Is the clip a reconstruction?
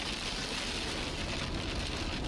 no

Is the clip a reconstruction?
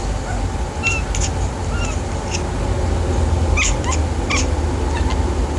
no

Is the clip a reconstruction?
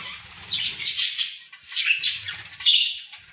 yes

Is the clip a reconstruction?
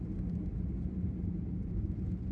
yes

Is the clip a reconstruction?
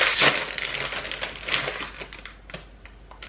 no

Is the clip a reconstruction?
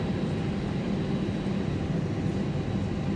no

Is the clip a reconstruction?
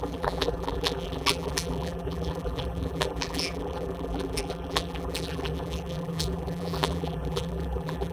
yes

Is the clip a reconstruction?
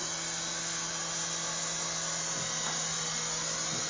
no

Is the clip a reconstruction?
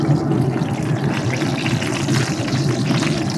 no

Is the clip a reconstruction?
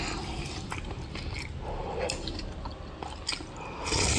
no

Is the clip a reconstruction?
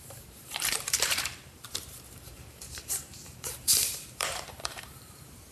yes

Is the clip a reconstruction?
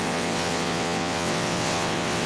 yes